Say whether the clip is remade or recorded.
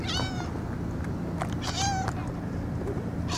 remade